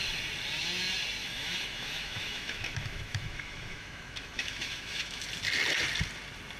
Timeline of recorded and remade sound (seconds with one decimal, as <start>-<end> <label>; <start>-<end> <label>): 0.0-1.2 recorded; 1.2-5.2 remade; 5.2-6.6 recorded